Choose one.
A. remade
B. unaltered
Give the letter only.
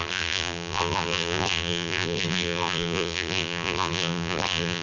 A